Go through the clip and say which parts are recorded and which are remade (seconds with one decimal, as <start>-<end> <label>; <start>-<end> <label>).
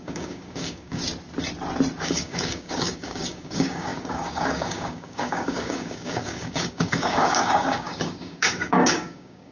0.0-1.0 remade; 1.0-2.0 recorded; 2.0-9.5 remade